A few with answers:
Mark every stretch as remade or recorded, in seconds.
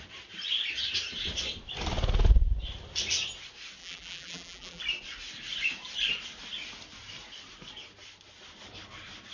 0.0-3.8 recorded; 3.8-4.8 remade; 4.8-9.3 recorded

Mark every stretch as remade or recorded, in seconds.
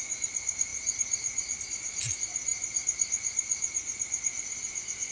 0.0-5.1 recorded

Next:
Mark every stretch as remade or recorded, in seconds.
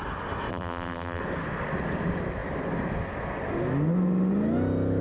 0.0-0.5 recorded; 0.5-1.2 remade; 1.2-5.0 recorded